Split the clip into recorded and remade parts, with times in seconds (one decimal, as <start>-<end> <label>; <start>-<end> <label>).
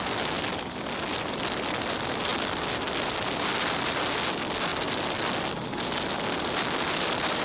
0.0-7.4 recorded